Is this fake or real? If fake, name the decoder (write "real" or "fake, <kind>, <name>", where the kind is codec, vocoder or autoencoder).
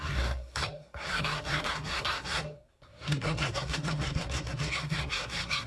fake, codec, SNAC